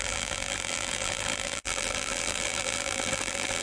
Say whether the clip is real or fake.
fake